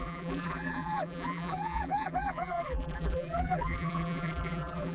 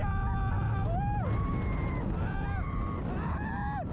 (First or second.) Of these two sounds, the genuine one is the second